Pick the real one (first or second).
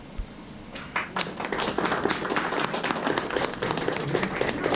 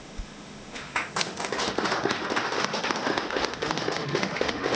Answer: first